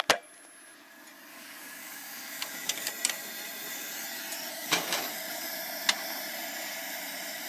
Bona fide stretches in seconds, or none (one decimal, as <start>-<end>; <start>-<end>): 0.0-1.3; 2.9-4.5; 5.5-7.5